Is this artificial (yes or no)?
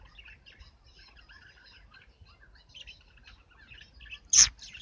no